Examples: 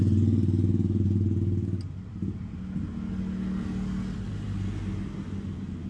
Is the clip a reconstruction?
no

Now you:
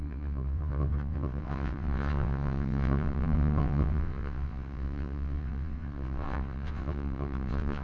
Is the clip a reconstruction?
yes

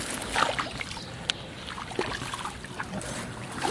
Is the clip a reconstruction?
no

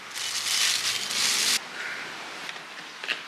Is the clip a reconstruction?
no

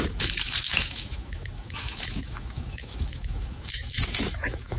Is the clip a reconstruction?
yes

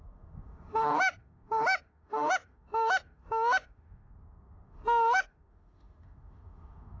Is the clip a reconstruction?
yes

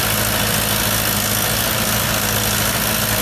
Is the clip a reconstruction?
no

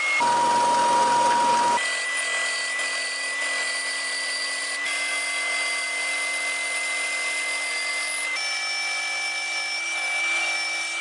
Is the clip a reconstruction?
no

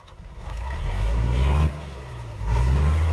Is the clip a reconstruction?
yes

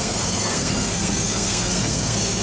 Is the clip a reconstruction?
yes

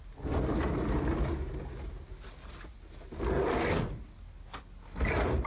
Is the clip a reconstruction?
no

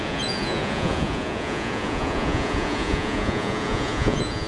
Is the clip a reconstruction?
yes